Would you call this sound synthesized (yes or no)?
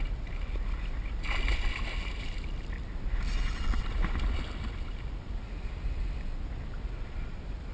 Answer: no